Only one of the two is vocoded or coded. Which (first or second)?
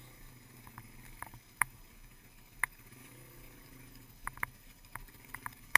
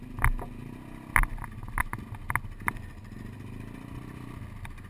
first